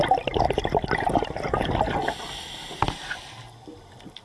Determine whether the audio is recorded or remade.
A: recorded